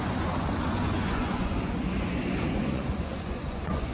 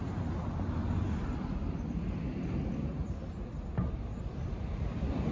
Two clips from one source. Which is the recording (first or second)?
second